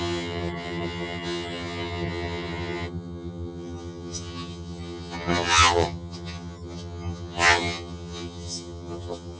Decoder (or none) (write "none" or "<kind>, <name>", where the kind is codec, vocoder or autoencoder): vocoder, HiFi-GAN